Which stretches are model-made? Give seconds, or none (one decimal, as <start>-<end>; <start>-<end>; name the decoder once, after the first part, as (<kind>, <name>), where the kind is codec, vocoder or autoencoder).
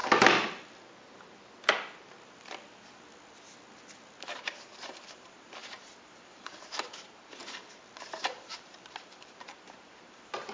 4.3-7.4 (vocoder, BigVGAN v2); 8.0-10.5